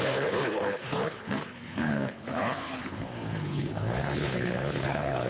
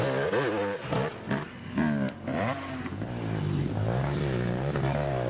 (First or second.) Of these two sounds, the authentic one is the second